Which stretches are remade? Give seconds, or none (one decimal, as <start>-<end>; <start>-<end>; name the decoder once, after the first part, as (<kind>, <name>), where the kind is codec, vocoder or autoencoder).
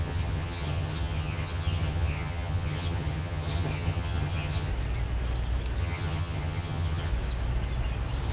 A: 0.0-4.7 (vocoder, HiFi-GAN); 5.8-7.1